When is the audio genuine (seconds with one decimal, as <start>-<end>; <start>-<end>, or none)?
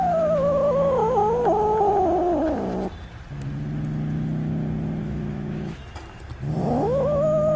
1.0-5.0; 5.8-6.7